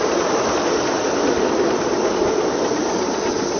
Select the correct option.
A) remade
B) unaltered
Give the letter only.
B